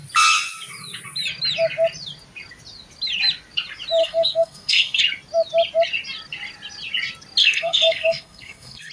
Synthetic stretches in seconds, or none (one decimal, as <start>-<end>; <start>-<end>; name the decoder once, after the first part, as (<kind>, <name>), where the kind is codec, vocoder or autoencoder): 4.0-5.0 (codec, SNAC); 7.4-8.9